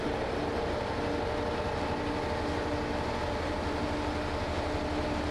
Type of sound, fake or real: real